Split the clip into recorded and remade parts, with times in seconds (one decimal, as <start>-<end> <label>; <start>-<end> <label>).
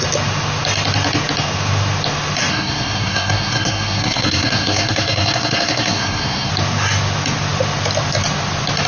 0.0-2.5 recorded; 2.5-6.5 remade; 6.5-8.9 recorded